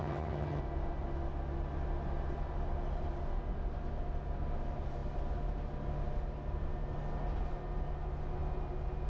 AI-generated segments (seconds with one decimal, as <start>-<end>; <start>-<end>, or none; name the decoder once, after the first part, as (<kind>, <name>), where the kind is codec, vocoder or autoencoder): 0.0-0.6 (vocoder, HiFi-GAN)

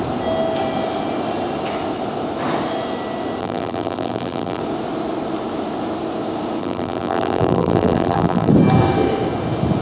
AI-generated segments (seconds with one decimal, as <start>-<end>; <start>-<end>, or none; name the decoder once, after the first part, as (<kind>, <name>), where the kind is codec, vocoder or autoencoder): 3.4-4.6 (vocoder, BigVGAN v2); 6.6-8.5

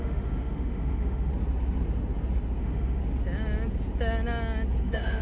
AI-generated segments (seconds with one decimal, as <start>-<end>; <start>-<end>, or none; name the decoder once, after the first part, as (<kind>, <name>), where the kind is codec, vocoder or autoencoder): 0.0-1.3 (autoencoder, DAC-VAE); 2.6-3.0; 4.8-5.2

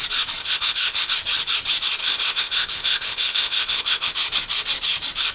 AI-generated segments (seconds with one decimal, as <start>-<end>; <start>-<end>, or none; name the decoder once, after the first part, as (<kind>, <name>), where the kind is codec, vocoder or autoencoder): 0.4-1.1 (codec, ZipCodec); 2.0-4.1

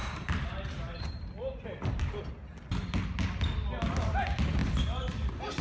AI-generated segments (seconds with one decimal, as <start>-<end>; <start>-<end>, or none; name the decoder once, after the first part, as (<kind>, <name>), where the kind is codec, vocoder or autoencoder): 0.0-2.3 (vocoder, BigVGAN v2); 4.6-5.1

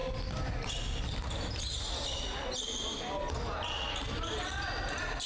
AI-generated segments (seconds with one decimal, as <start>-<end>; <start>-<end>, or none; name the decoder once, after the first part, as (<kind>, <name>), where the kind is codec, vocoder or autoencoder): none